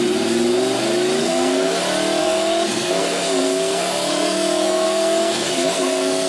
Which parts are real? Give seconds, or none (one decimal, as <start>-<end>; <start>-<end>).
0.0-1.2; 1.8-2.2